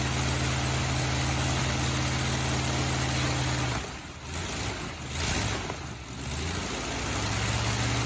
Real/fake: real